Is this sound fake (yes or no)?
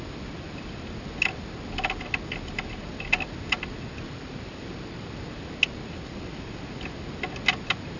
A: no